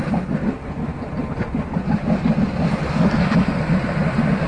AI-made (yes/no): no